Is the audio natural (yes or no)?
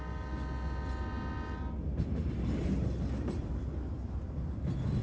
yes